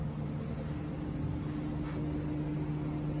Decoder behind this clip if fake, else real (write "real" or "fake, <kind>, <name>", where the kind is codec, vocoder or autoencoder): real